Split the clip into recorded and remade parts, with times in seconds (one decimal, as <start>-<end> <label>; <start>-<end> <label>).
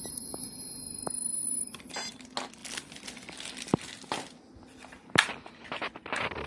0.0-1.4 recorded; 1.4-1.9 remade; 1.9-2.6 recorded; 2.6-3.1 remade; 3.1-6.5 recorded